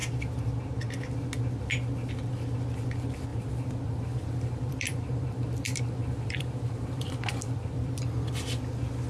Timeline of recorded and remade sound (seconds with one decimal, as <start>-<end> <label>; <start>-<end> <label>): 0.0-3.3 recorded; 3.3-8.4 remade; 8.4-9.1 recorded